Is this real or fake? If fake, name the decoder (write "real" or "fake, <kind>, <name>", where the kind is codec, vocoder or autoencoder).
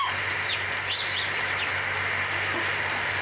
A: real